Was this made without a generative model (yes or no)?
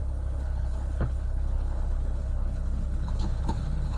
no